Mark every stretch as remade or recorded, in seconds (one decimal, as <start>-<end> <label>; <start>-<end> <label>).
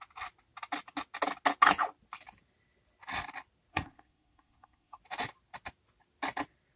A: 0.0-3.7 recorded; 3.7-5.0 remade; 5.0-6.8 recorded